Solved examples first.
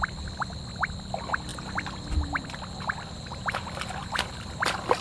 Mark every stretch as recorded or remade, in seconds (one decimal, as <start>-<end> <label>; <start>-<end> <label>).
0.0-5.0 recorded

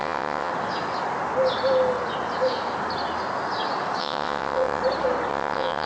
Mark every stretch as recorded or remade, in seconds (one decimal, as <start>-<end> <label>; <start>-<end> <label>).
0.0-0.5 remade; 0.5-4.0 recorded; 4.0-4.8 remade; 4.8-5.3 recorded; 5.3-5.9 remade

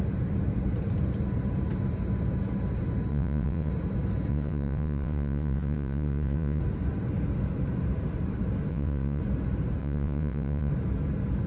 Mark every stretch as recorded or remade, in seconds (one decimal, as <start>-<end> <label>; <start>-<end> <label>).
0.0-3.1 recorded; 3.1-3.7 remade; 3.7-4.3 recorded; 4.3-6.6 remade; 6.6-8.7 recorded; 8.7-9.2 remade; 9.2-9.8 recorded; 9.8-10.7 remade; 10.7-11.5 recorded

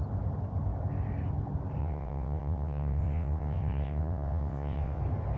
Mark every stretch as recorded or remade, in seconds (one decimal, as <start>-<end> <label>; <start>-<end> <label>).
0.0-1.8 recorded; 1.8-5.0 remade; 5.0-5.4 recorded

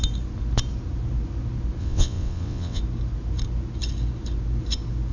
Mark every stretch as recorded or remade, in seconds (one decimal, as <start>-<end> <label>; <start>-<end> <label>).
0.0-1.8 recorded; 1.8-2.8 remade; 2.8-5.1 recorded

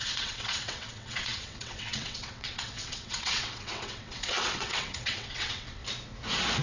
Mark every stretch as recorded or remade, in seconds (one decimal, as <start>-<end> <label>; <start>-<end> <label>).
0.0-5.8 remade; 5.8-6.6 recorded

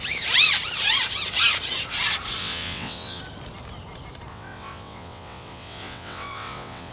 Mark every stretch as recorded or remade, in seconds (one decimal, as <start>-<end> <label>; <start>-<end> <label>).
0.0-2.4 recorded; 2.4-3.2 remade; 3.2-4.3 recorded; 4.3-6.9 remade